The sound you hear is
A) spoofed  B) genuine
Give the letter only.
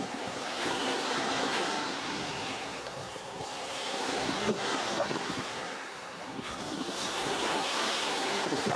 A